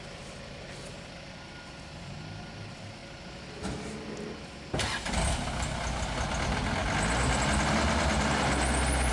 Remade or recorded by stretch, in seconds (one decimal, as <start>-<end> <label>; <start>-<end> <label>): 0.0-9.1 recorded